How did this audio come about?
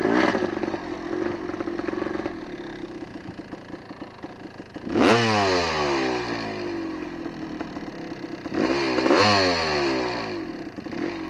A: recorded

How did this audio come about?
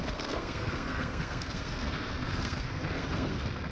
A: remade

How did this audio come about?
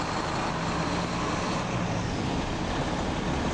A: recorded